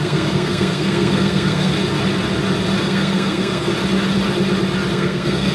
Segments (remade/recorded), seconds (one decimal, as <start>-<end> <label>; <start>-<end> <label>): 0.0-1.7 remade; 1.7-2.8 recorded; 2.8-3.7 remade; 3.7-4.9 recorded; 4.9-5.5 remade